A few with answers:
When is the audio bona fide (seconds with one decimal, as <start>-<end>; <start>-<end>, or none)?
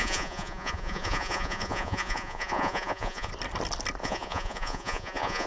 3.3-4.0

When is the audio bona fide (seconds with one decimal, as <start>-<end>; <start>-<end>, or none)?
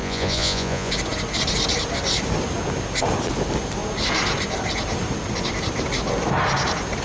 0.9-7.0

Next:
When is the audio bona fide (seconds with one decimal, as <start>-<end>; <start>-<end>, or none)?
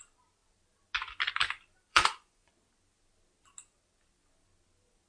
0.0-1.9; 2.5-5.1